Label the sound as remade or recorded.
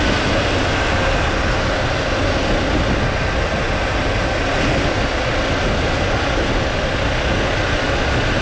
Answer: recorded